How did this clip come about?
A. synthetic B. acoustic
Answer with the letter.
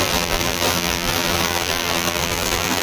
A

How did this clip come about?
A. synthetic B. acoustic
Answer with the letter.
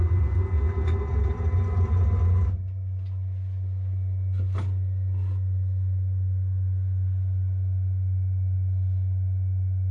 B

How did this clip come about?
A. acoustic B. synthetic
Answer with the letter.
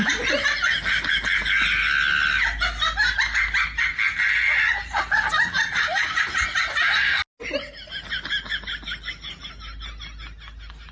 A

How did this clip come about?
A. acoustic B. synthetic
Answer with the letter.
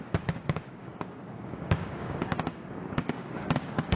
B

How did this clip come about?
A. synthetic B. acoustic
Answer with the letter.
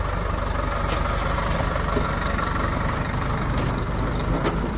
B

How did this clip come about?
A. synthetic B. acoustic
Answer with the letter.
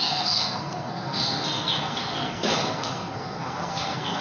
A